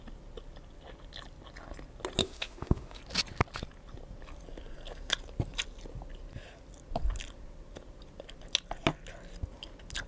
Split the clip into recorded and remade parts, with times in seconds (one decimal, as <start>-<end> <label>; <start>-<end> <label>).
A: 0.0-2.2 recorded; 2.2-3.0 remade; 3.0-10.1 recorded